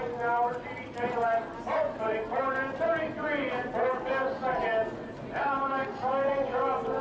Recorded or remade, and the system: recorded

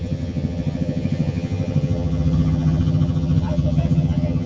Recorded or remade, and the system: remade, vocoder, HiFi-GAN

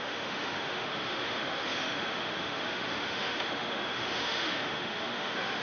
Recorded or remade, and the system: remade, autoencoder, DAC-VAE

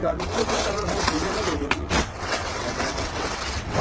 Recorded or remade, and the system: remade, vocoder, WaveNeXt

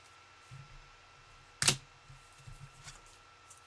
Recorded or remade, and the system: recorded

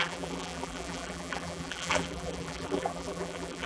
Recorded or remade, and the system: remade, vocoder, BigVGAN v2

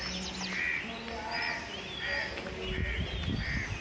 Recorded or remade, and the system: recorded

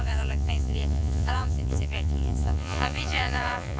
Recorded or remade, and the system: remade, vocoder, Vocos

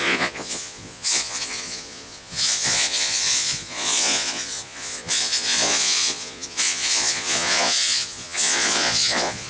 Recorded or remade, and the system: remade, vocoder, Vocos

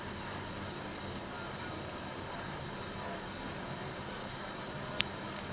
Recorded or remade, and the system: recorded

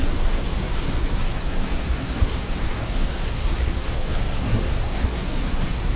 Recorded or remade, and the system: remade, codec, SNAC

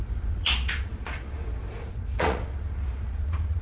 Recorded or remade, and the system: remade, vocoder, Vocos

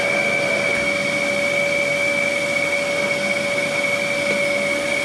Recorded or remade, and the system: recorded